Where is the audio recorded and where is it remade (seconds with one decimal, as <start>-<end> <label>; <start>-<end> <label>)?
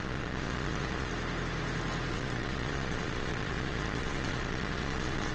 0.0-1.1 remade; 1.1-2.1 recorded; 2.1-5.3 remade